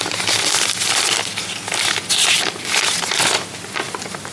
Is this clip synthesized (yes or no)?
no